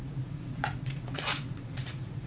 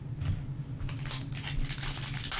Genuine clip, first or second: second